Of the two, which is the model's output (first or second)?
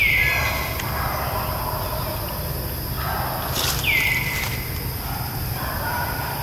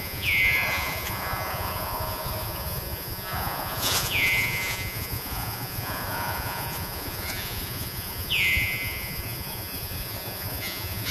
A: second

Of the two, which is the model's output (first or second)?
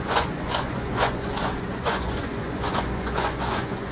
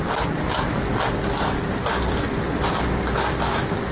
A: first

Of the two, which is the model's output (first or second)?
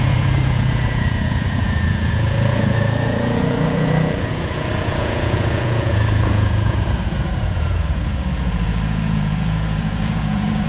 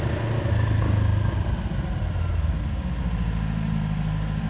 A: first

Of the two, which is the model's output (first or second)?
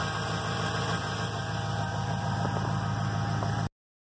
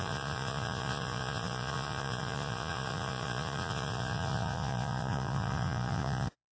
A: second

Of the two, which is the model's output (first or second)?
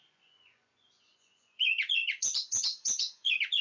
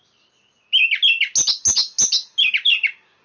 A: first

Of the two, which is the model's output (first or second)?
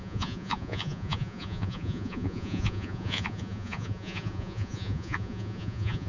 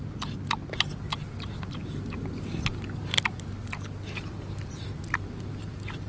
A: first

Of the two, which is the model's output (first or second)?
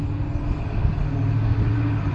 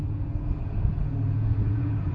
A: second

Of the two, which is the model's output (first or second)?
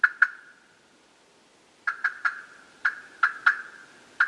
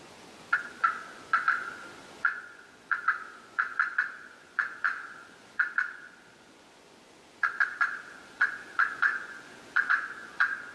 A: second